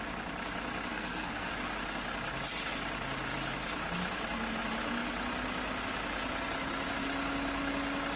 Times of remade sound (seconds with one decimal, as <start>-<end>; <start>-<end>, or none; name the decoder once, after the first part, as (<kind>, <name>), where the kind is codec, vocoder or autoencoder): 0.9-1.5 (codec, SNAC)